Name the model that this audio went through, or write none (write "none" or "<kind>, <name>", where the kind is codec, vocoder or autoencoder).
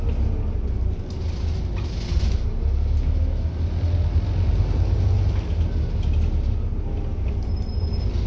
none